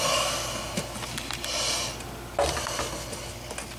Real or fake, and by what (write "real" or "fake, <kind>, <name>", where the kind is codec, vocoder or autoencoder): real